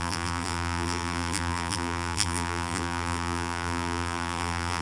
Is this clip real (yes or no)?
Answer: no